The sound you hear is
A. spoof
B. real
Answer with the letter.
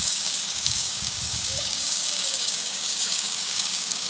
A